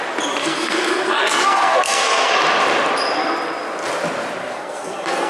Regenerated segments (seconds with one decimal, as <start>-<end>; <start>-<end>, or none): 0.4-2.3; 4.4-5.3